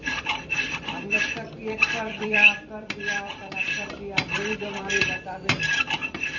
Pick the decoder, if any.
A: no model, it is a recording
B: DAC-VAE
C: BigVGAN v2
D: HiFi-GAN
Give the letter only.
C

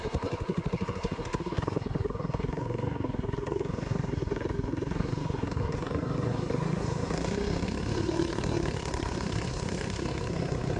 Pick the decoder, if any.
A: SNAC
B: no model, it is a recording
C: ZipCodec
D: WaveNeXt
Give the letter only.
A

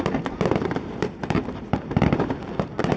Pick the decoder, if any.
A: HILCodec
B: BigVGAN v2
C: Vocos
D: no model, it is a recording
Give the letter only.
B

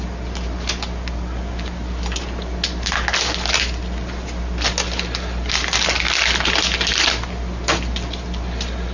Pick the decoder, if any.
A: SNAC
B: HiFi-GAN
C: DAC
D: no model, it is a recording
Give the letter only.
D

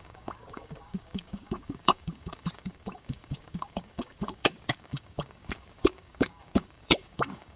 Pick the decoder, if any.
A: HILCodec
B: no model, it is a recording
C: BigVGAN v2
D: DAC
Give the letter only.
D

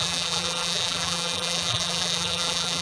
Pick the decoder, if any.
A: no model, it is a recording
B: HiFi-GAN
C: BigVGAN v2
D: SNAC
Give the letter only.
C